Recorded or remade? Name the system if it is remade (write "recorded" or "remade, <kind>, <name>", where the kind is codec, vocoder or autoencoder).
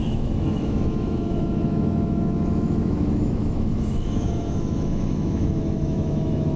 remade, autoencoder, DAC-VAE